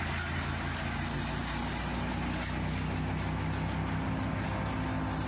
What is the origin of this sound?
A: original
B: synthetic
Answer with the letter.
A